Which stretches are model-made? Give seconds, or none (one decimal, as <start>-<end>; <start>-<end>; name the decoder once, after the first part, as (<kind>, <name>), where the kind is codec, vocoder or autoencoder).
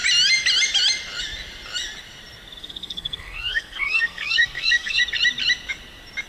2.6-5.0 (codec, SNAC)